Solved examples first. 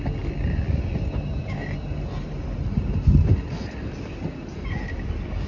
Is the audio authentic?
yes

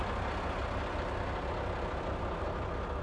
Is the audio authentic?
yes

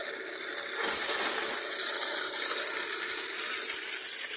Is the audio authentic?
yes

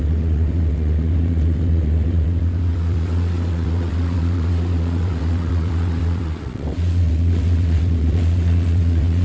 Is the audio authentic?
no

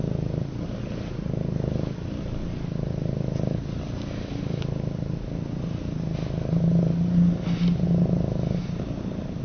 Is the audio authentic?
yes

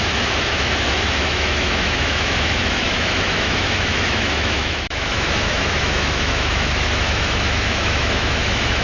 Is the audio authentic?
no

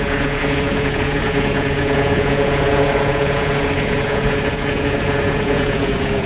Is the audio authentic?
no